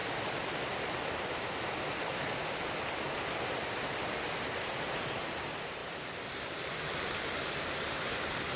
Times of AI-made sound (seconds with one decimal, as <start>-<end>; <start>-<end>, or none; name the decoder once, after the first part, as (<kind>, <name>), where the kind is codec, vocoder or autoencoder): none